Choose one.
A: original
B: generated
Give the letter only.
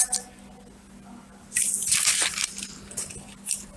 A